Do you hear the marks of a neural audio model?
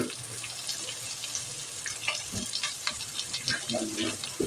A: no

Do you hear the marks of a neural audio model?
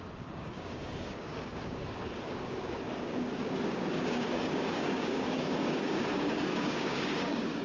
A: yes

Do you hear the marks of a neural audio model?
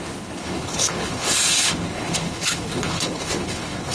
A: yes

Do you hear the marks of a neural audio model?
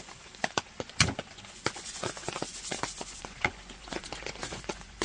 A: yes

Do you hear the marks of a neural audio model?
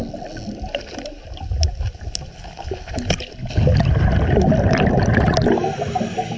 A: no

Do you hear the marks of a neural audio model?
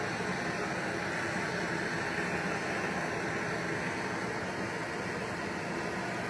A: no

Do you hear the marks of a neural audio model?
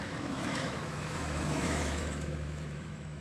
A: yes